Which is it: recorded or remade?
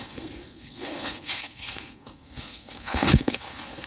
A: remade